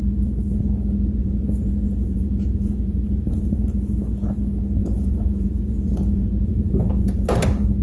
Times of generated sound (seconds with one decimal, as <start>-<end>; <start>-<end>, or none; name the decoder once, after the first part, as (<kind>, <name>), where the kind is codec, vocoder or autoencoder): 1.2-3.5 (vocoder, Vocos); 4.8-7.3

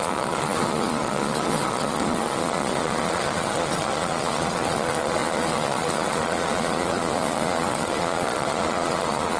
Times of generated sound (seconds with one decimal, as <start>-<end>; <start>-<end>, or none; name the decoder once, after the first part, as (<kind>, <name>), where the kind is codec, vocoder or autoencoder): 0.0-9.4 (vocoder, Vocos)

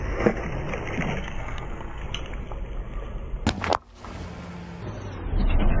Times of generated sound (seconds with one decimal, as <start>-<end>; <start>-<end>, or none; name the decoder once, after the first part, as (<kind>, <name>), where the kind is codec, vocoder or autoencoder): 0.0-0.4 (codec, SNAC); 1.2-2.0

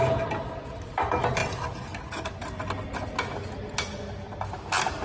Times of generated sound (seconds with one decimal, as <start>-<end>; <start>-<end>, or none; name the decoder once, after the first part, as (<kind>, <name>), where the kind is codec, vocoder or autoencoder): none

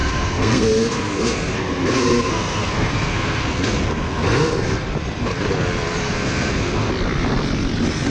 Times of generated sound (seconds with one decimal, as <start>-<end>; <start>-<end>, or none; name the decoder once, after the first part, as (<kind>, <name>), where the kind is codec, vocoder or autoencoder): 0.0-4.9 (codec, SNAC); 6.0-6.9

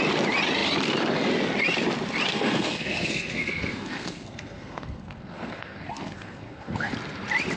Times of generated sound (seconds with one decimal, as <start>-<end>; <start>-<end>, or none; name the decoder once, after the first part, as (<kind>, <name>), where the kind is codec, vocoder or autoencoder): 2.3-6.9 (codec, SNAC)

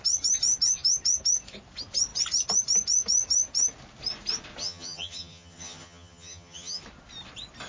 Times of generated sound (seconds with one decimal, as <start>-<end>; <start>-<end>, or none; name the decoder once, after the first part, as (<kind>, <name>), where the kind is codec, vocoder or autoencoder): 4.6-6.8 (vocoder, HiFi-GAN)